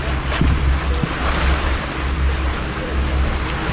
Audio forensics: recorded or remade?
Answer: recorded